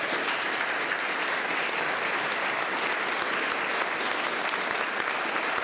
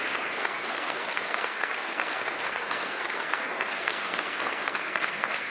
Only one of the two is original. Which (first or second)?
first